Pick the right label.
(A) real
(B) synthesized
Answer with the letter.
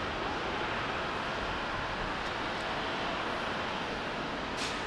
A